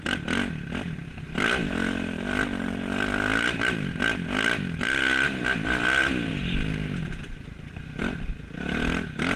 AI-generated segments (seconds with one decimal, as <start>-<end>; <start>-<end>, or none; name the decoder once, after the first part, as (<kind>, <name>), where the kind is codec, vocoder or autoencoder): none